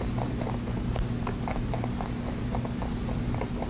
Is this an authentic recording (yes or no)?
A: yes